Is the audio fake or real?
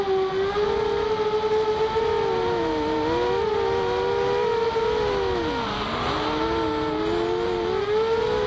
real